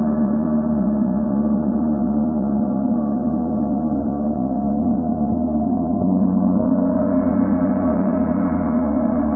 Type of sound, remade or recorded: remade